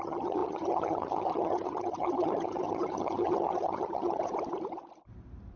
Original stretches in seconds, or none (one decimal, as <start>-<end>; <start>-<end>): 4.3-5.6